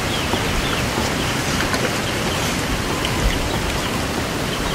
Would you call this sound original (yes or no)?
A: yes